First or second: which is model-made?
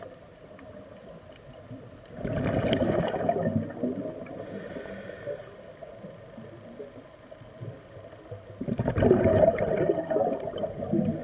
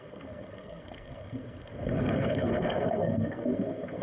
second